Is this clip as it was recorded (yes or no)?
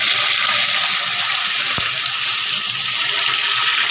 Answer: yes